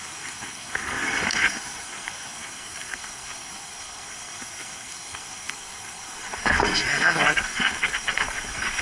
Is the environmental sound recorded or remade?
remade